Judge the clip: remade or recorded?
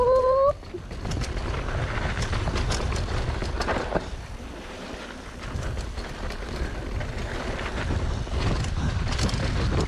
recorded